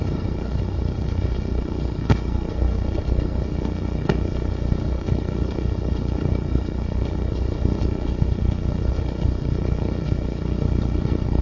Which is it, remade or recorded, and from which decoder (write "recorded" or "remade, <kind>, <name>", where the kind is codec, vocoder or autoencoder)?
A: remade, codec, SNAC